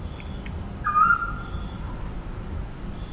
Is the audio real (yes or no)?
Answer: yes